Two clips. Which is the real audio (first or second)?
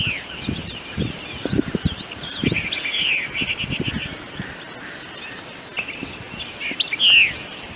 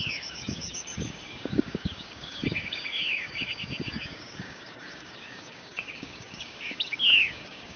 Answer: first